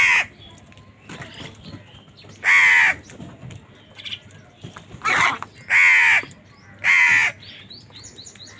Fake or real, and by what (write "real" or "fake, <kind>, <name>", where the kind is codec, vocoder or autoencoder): real